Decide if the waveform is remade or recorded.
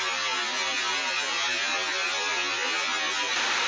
recorded